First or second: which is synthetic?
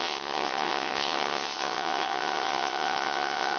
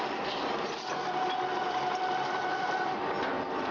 first